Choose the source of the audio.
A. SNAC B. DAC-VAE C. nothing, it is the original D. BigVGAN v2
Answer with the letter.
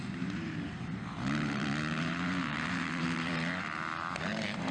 D